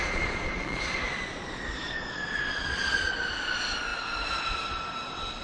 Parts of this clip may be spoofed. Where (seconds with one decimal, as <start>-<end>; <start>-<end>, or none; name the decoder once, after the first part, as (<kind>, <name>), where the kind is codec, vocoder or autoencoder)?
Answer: 0.0-3.2 (vocoder, Vocos)